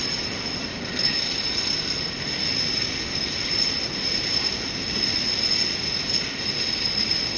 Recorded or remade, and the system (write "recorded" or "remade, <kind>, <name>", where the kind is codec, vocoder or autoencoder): recorded